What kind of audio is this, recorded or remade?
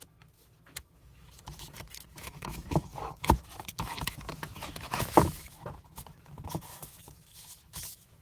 remade